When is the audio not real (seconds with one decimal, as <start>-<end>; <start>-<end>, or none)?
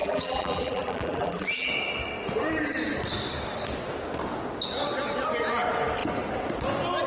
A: 0.0-1.7